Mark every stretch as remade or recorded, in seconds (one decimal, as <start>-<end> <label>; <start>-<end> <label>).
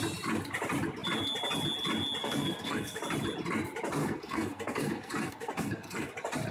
0.0-2.2 recorded; 2.2-3.0 remade; 3.0-4.0 recorded; 4.0-6.1 remade; 6.1-6.5 recorded